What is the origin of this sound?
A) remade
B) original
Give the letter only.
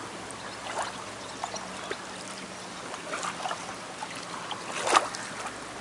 B